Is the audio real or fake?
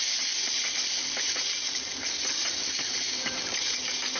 real